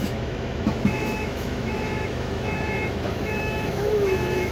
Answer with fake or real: fake